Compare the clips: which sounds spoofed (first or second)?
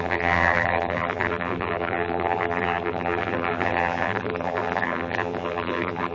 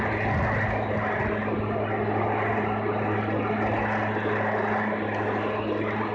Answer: first